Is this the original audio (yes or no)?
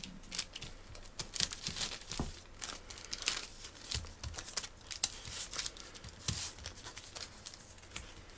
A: yes